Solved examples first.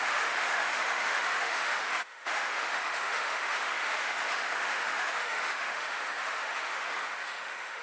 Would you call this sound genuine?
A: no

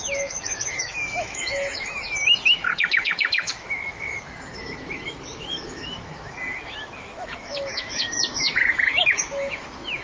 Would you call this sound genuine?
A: no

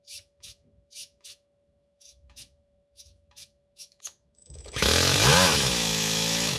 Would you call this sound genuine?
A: no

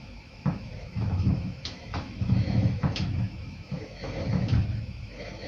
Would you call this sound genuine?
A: no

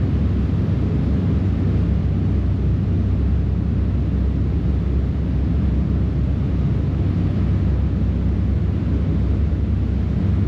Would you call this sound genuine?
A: yes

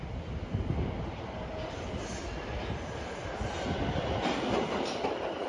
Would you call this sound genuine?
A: yes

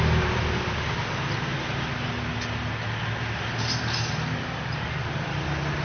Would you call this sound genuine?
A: yes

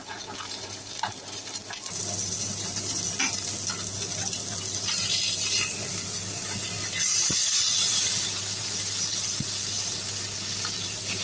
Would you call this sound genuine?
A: yes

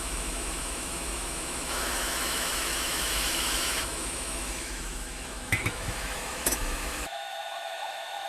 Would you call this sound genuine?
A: no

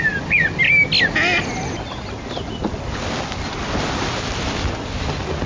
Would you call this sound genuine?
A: yes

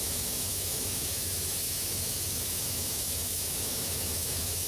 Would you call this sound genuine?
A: no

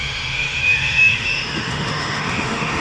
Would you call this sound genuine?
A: no